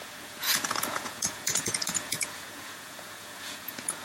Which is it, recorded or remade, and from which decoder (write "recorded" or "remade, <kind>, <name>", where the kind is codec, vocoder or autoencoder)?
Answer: remade, vocoder, Vocos